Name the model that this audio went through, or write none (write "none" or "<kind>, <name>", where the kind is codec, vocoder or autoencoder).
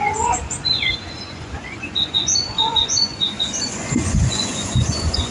vocoder, Vocos